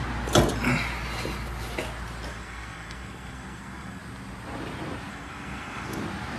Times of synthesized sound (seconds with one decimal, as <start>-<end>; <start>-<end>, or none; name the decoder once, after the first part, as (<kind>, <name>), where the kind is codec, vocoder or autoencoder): 2.3-4.0 (codec, SNAC); 5.1-6.0